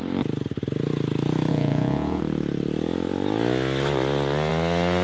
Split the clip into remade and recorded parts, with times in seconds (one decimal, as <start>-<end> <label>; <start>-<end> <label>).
0.0-1.5 recorded; 1.5-2.2 remade; 2.2-5.0 recorded